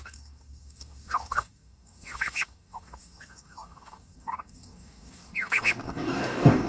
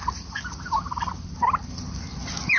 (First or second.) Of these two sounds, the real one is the second